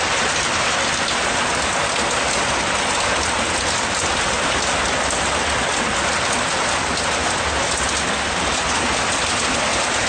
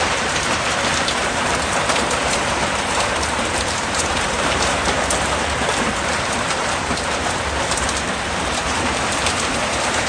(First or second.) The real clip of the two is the first